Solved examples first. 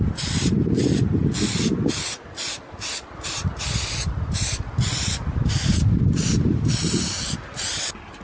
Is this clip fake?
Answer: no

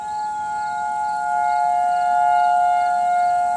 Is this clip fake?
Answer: no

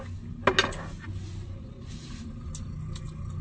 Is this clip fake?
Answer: no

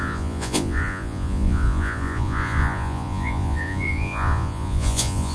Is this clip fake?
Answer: yes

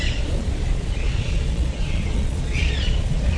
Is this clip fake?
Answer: yes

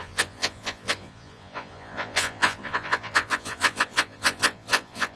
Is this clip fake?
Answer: yes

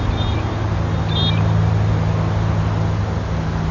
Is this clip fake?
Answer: no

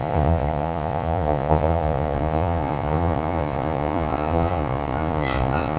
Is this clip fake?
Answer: yes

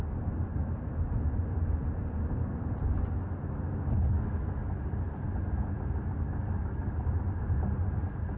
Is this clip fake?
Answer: no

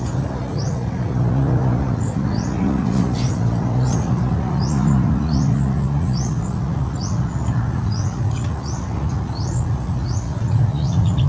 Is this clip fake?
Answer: yes